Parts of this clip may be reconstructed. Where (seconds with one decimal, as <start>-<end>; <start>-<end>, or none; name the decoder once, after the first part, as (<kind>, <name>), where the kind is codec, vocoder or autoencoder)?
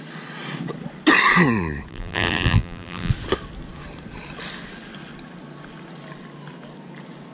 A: 1.9-3.1 (vocoder, BigVGAN v2)